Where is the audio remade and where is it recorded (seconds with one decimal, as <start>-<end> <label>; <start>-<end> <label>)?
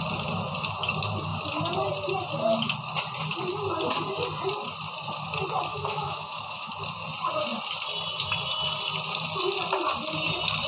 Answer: 0.0-5.7 recorded; 5.7-6.7 remade; 6.7-10.7 recorded